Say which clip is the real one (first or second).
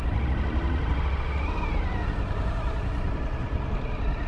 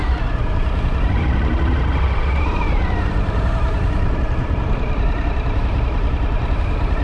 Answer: first